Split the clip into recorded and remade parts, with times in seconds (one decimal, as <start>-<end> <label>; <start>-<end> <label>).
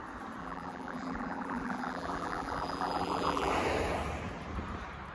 0.0-0.4 recorded; 0.4-3.5 remade; 3.5-5.1 recorded